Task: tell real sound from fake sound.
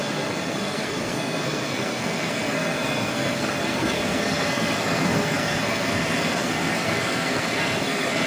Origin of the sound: fake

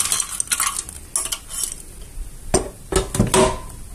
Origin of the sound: real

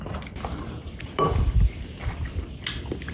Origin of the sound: real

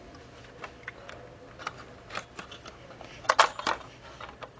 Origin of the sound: real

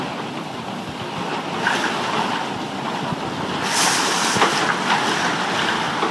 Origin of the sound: real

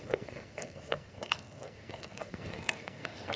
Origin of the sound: fake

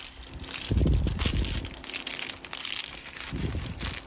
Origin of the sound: real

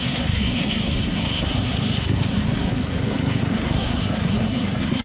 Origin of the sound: fake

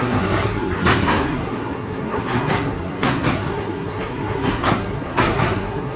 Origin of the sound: fake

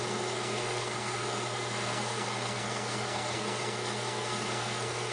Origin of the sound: fake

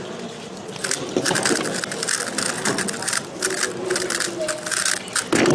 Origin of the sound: real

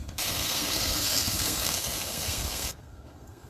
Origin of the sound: fake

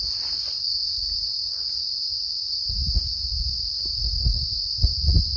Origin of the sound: real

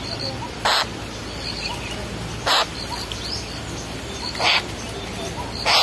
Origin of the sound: real